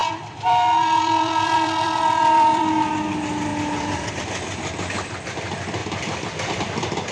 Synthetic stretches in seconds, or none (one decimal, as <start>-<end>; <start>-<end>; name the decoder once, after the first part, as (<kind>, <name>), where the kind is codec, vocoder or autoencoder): 0.0-2.6 (vocoder, BigVGAN v2)